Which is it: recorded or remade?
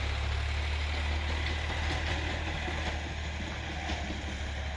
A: recorded